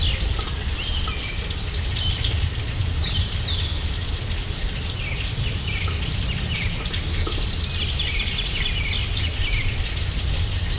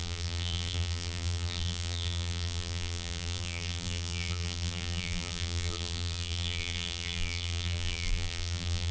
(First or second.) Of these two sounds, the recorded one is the first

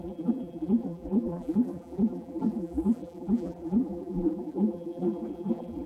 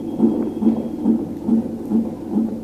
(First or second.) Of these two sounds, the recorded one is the second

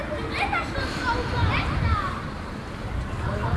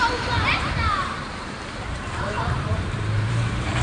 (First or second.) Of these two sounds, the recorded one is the first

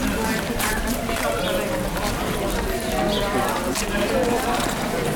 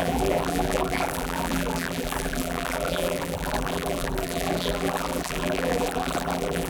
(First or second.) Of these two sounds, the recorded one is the first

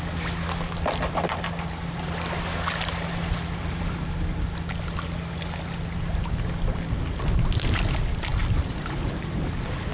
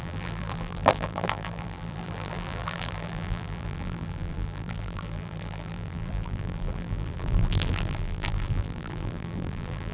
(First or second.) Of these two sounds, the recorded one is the first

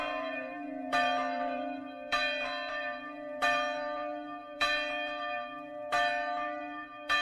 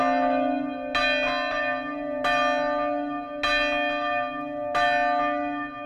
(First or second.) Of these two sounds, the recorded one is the second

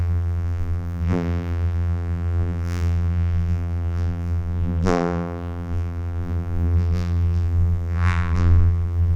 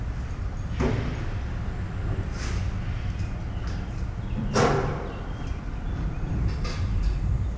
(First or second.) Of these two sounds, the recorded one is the second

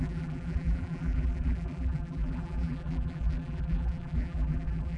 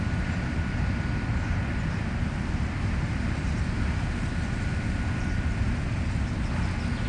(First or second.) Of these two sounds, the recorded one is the second